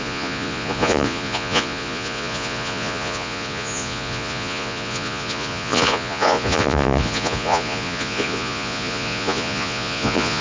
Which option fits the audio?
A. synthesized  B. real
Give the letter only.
A